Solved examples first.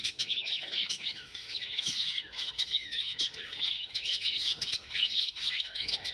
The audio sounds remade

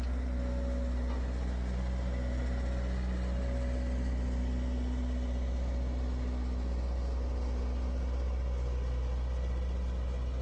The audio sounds recorded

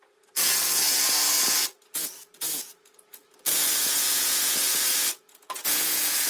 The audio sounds remade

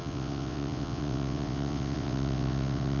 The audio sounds remade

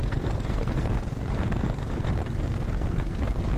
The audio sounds remade